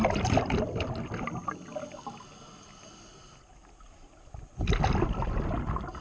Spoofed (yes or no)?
no